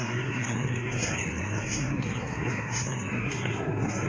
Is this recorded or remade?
remade